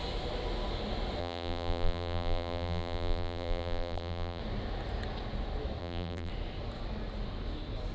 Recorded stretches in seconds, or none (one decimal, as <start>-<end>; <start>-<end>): 0.0-1.2; 4.4-5.8; 6.3-7.9